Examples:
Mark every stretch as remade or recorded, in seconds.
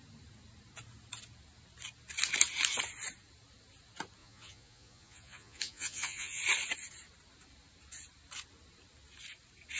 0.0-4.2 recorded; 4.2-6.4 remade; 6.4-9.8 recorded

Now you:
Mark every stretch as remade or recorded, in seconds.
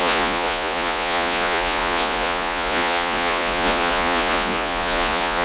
0.0-5.4 remade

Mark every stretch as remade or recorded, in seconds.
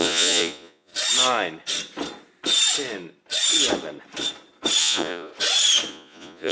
0.0-0.9 remade; 0.9-4.8 recorded; 4.8-5.3 remade; 5.3-5.9 recorded; 5.9-6.5 remade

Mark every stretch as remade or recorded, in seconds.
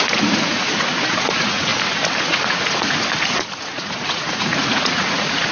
0.0-1.7 remade; 1.7-2.2 recorded; 2.2-5.5 remade